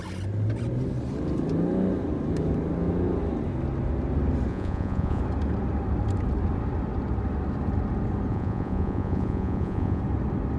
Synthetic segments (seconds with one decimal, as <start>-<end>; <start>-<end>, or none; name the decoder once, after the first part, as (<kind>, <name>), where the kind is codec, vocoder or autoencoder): 4.5-5.2 (vocoder, Vocos); 8.3-10.0